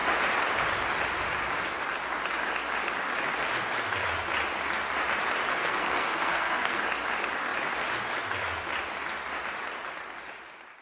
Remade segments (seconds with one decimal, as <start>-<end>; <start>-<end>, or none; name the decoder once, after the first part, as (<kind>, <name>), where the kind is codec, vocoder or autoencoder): 5.6-6.8 (codec, SNAC)